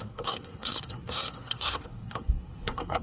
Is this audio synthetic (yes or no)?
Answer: yes